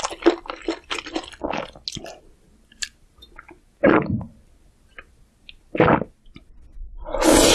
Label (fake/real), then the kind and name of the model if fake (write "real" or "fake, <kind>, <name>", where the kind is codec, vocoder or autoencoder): real